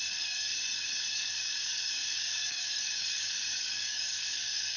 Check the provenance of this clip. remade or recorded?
remade